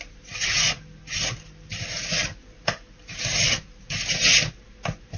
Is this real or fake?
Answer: real